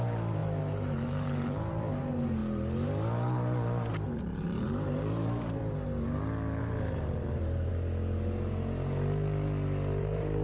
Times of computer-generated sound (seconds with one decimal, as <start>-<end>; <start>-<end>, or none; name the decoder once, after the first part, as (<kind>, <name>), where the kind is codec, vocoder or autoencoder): 0.0-2.4 (vocoder, BigVGAN v2); 3.9-5.6; 6.6-7.7; 10.0-10.4